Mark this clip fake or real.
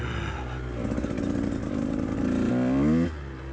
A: real